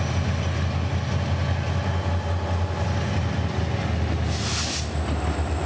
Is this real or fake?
real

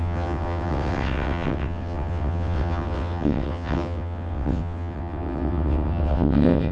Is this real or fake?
fake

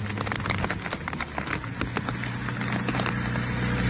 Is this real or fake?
real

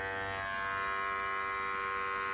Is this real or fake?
real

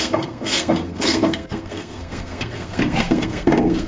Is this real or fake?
fake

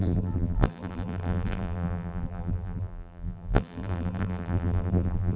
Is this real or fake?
fake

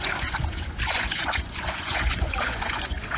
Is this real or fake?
fake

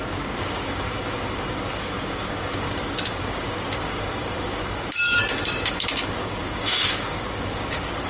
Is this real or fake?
fake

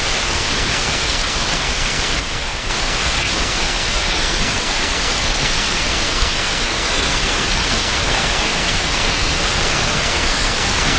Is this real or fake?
fake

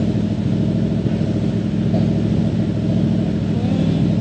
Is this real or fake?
real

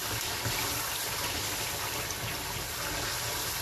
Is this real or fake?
real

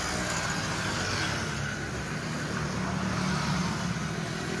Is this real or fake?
real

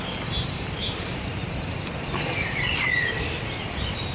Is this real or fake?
real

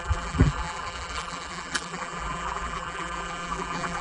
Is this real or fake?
fake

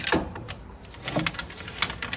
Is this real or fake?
real